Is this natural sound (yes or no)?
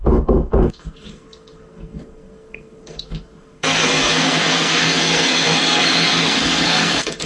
no